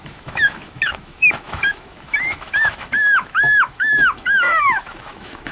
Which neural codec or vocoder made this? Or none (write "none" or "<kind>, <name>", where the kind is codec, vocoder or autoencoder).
autoencoder, DAC-VAE